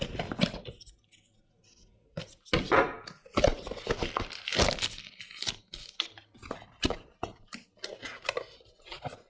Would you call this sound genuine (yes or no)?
yes